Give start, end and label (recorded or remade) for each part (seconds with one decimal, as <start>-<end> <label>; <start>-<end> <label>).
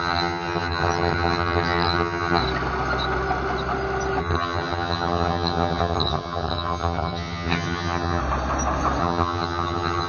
0.0-2.4 remade; 2.4-4.2 recorded; 4.2-8.2 remade; 8.2-9.0 recorded; 9.0-10.1 remade